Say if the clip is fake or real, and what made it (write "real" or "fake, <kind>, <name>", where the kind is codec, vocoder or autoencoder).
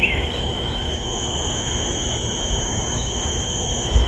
fake, autoencoder, DAC-VAE